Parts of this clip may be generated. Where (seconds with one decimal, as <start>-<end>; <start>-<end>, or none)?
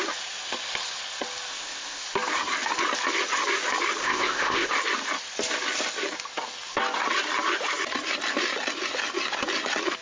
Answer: 1.5-2.0; 4.0-4.7